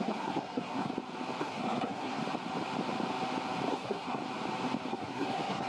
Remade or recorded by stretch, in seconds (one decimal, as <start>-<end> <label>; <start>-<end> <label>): 0.0-0.9 remade; 0.9-1.4 recorded; 1.4-2.2 remade; 2.2-3.7 recorded; 3.7-4.2 remade; 4.2-4.9 recorded; 4.9-5.7 remade